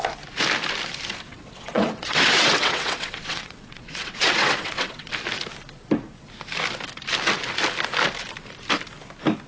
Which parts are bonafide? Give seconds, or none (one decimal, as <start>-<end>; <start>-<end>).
0.0-1.3; 5.1-9.5